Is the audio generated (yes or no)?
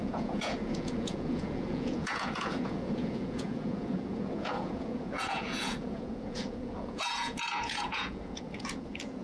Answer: yes